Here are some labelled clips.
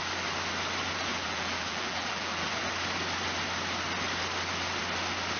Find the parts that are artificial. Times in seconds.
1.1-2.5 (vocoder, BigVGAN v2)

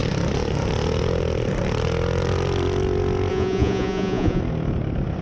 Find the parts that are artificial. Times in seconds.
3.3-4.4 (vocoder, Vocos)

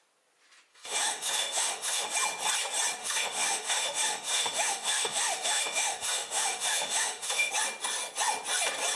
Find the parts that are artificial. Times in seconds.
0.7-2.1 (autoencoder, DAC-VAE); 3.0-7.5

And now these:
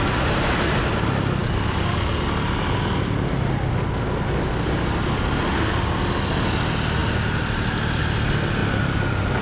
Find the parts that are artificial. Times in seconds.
none

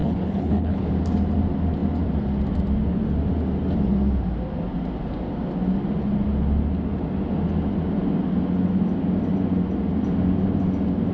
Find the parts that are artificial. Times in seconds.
0.0-0.8 (codec, HILCodec)